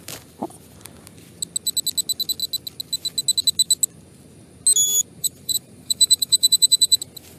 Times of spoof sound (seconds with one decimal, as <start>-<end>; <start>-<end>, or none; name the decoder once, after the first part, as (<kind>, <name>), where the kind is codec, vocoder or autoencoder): 5.2-7.0 (vocoder, BigVGAN v2)